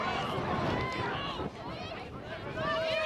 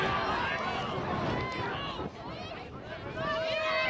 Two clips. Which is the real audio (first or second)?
second